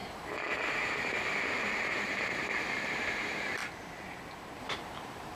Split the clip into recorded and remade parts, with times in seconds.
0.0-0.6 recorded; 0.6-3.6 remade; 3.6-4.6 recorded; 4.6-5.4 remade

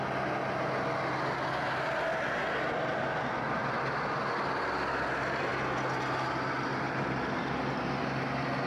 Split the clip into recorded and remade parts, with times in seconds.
0.0-8.7 recorded

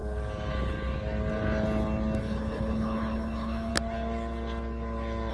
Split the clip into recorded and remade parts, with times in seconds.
0.0-2.2 recorded; 2.2-3.7 remade; 3.7-5.3 recorded